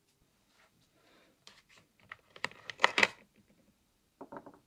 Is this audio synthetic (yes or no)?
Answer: yes